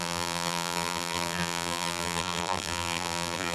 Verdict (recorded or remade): remade